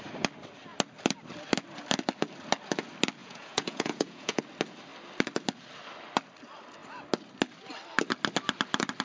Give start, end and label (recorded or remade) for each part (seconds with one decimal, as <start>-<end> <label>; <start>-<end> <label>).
0.0-3.2 recorded; 3.2-4.4 remade; 4.4-9.0 recorded